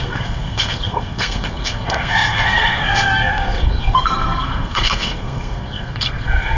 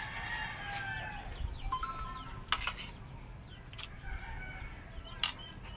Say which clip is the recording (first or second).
second